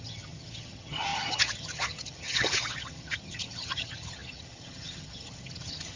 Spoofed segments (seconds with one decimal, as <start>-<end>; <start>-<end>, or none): 0.0-6.0

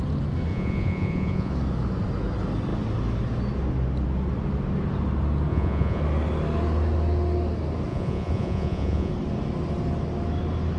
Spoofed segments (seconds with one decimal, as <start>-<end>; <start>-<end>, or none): 0.5-1.5; 5.5-6.0; 7.9-9.1

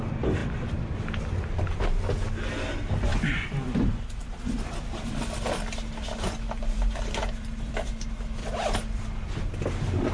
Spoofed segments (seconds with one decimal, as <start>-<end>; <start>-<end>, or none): 0.4-1.0; 3.1-7.9; 8.4-9.4

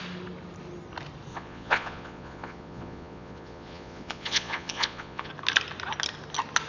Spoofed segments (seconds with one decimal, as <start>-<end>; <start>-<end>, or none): 1.3-5.3